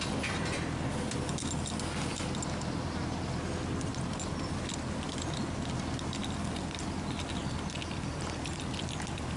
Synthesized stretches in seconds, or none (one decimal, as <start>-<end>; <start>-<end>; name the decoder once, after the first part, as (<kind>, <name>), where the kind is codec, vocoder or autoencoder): none